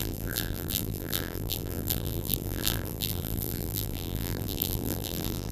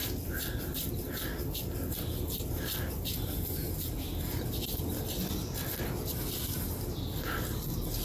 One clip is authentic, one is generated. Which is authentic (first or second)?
second